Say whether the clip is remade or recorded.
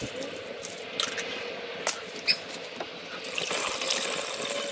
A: recorded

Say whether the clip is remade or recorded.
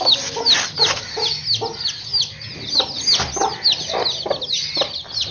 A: recorded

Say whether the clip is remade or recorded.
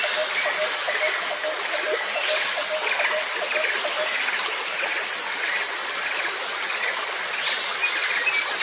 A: recorded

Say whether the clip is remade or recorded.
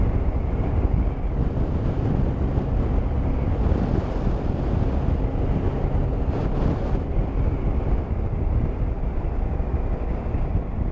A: recorded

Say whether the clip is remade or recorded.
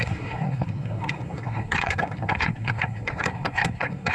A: remade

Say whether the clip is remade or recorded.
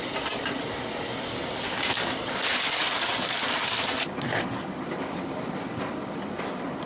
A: remade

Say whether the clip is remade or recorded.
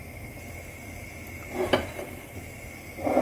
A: recorded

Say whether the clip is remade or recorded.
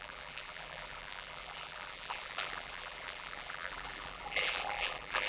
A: remade